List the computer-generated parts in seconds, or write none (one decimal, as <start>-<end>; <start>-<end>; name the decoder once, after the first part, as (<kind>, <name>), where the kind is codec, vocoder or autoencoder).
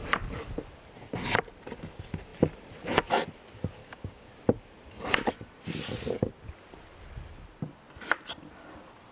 3.8-4.3 (codec, DAC)